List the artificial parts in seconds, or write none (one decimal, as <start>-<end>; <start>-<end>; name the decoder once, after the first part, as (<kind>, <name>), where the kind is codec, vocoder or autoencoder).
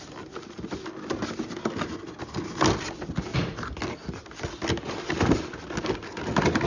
none